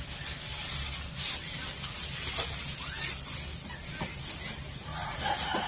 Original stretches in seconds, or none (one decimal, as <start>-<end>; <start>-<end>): 0.0-4.9